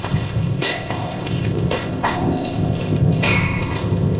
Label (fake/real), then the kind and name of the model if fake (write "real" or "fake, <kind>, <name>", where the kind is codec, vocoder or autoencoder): fake, codec, ZipCodec